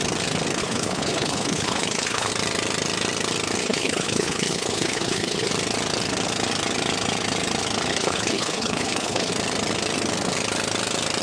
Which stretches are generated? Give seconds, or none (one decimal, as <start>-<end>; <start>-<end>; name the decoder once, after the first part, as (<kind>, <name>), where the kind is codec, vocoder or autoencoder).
0.6-2.3 (codec, HILCodec); 3.6-5.5; 7.9-9.3